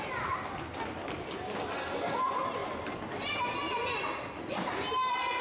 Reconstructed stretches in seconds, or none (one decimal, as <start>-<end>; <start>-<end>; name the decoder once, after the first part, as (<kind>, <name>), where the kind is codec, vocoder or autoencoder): none